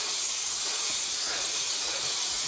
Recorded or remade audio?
remade